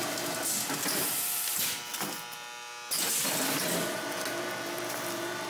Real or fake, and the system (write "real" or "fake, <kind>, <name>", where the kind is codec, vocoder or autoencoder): real